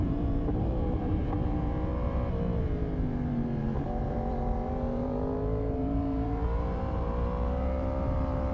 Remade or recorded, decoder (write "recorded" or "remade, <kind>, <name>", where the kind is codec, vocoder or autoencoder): remade, vocoder, BigVGAN v2